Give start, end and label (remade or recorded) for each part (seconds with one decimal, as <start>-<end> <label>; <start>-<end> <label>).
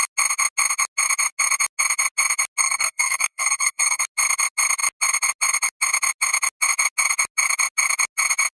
0.0-2.6 recorded; 2.6-4.0 remade; 4.0-8.5 recorded